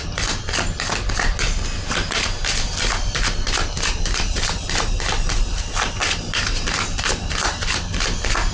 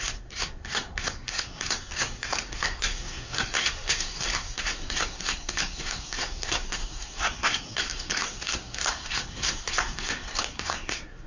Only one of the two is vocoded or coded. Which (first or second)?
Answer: second